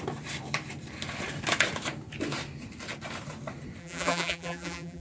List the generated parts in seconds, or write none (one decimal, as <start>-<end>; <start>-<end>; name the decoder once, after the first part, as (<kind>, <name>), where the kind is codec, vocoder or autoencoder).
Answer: 3.8-5.0 (vocoder, BigVGAN v2)